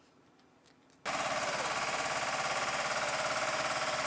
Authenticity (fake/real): real